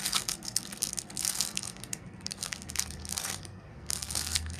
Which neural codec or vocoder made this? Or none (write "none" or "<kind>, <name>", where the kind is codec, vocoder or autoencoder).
codec, SNAC